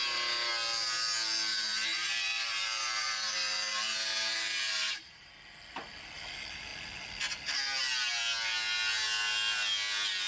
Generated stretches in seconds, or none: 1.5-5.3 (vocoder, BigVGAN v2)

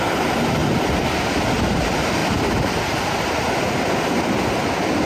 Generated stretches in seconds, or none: none